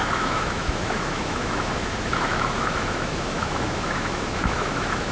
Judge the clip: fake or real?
fake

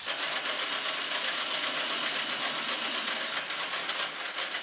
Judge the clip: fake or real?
real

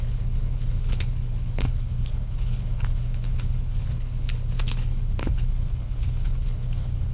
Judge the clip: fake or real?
fake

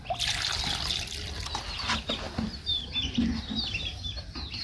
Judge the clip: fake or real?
real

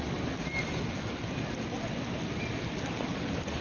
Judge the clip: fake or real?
real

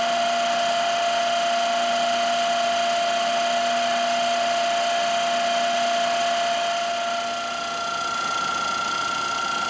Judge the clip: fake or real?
real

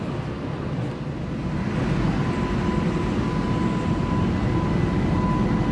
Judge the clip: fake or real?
real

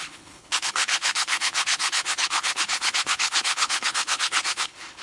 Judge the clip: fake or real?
fake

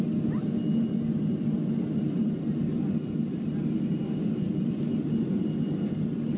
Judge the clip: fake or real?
real